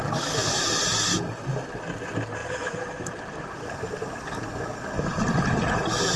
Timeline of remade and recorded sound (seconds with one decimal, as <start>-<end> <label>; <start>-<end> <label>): 0.0-2.4 recorded; 2.4-3.1 remade; 3.1-6.2 recorded